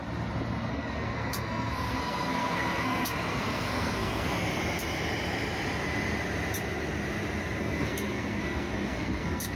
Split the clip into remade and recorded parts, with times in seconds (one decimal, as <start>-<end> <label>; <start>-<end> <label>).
0.0-0.7 recorded; 0.7-4.6 remade; 4.6-7.6 recorded; 7.6-9.6 remade